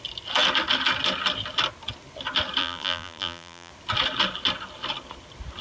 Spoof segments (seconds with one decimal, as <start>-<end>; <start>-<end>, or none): 2.6-3.7